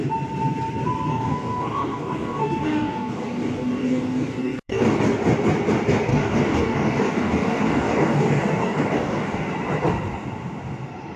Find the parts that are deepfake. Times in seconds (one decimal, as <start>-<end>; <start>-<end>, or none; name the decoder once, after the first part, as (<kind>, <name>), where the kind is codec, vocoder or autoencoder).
1.1-5.0 (codec, DAC); 6.1-9.5